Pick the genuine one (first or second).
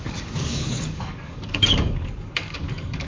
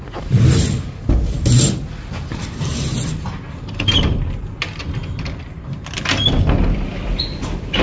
second